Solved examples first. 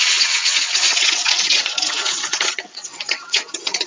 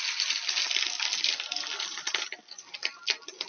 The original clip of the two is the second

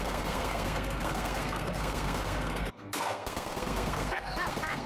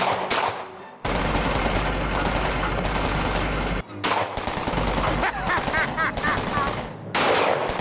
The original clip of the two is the second